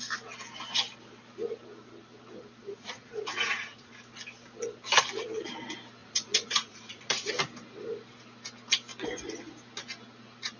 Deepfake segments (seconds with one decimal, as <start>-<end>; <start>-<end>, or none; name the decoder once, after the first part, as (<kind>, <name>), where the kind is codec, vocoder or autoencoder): 2.6-3.9 (vocoder, Vocos); 6.0-7.3

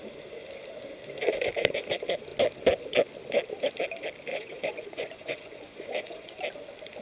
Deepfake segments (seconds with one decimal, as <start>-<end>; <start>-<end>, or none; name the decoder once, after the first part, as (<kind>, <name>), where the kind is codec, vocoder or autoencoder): 4.3-6.4 (vocoder, Vocos)